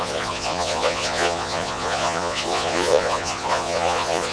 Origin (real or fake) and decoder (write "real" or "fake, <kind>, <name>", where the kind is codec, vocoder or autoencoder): fake, vocoder, Vocos